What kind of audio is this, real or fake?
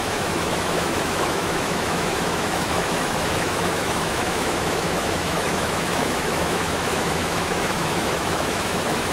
fake